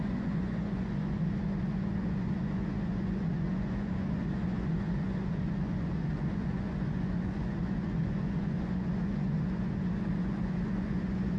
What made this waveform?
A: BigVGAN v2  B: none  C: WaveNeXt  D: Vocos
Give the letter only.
D